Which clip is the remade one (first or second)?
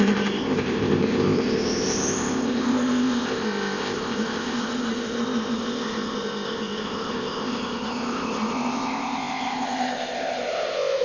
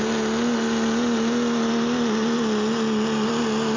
first